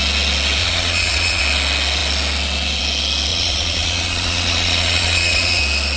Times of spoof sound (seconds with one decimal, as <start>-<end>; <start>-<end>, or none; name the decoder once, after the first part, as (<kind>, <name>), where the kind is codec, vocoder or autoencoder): 0.6-1.4 (vocoder, Vocos); 3.3-5.6